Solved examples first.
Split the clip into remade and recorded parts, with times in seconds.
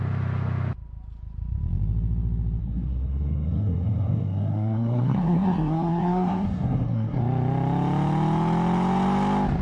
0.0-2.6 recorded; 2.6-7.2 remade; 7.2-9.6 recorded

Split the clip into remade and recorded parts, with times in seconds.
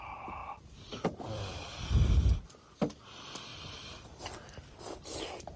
0.0-0.4 recorded; 0.4-3.1 remade; 3.1-3.5 recorded; 3.5-4.8 remade; 4.8-5.6 recorded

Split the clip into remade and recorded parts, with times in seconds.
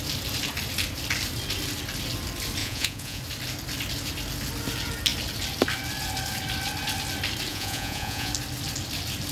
0.0-2.6 recorded; 2.6-3.2 remade; 3.2-7.5 recorded; 7.5-8.3 remade; 8.3-9.3 recorded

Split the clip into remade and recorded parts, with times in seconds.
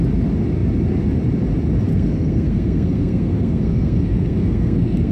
0.0-1.9 recorded; 1.9-5.1 remade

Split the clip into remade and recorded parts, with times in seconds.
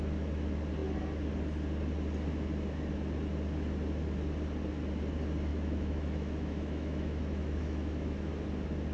0.0-5.5 recorded; 5.5-8.3 remade; 8.3-8.9 recorded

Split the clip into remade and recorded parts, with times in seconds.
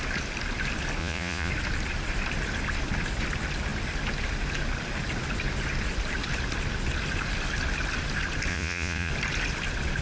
0.0-1.0 recorded; 1.0-1.5 remade; 1.5-8.5 recorded; 8.5-9.1 remade; 9.1-10.0 recorded